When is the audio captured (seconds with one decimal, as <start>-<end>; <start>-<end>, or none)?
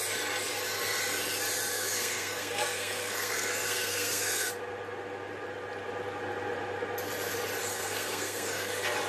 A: 0.0-1.7; 4.5-7.7; 8.7-9.1